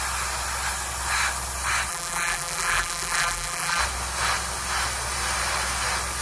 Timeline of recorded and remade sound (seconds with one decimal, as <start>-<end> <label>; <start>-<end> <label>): 0.0-1.9 recorded; 1.9-3.8 remade; 3.8-6.2 recorded